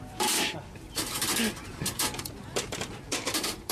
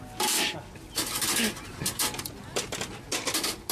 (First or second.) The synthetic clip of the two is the first